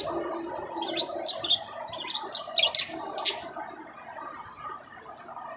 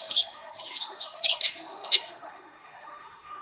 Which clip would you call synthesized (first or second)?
second